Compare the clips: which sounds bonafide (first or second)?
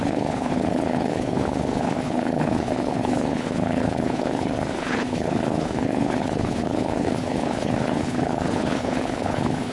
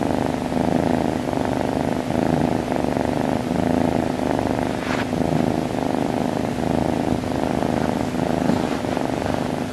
second